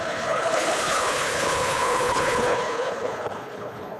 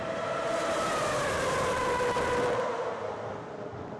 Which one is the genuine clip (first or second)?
second